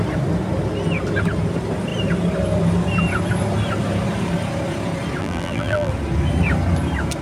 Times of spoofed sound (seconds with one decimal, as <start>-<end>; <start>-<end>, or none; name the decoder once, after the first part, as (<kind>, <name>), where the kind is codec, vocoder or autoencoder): 5.2-5.9 (vocoder, BigVGAN v2)